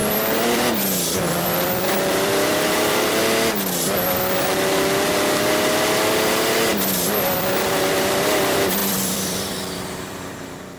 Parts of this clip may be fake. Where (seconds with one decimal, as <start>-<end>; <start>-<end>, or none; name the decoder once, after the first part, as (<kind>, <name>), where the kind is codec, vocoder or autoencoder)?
0.0-3.2 (vocoder, BigVGAN v2); 6.1-10.8